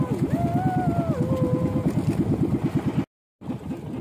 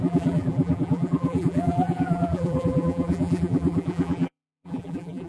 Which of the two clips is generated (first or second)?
second